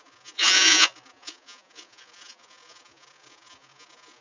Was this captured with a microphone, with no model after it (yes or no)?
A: no